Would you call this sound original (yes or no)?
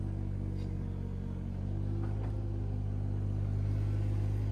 yes